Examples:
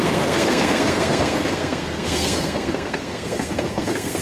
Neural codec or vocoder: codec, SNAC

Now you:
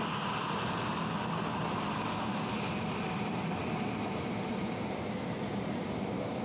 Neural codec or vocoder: none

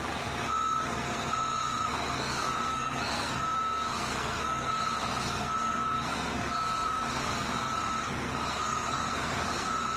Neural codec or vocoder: codec, SNAC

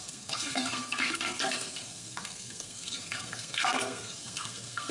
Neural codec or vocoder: codec, SNAC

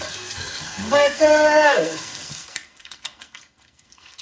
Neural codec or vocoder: codec, SNAC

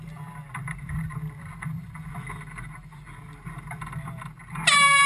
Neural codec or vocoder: none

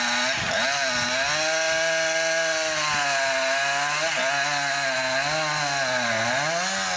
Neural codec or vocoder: none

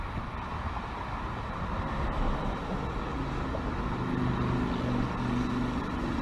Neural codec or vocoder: none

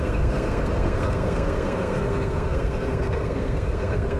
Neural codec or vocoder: codec, SNAC